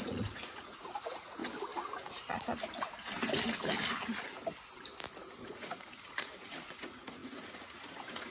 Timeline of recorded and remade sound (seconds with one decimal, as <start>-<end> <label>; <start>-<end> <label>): 0.0-1.4 remade; 1.4-5.5 recorded; 5.5-8.3 remade